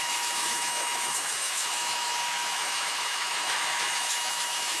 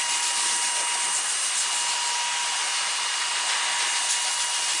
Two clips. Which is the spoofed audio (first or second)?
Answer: first